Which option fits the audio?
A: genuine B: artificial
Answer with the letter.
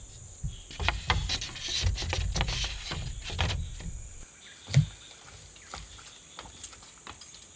A